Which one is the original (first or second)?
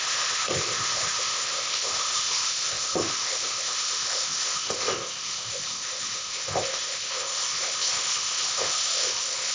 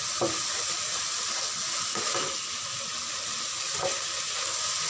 second